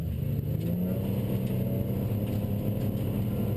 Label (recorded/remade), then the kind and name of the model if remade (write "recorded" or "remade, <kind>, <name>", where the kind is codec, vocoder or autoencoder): recorded